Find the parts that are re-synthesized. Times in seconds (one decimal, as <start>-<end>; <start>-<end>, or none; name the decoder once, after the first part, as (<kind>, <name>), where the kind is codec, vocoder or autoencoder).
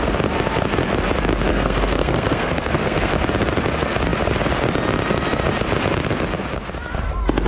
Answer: 1.5-3.1 (codec, SNAC)